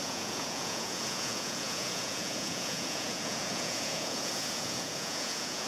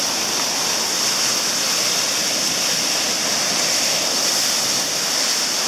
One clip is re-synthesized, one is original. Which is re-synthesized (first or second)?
first